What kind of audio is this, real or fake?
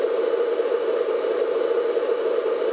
real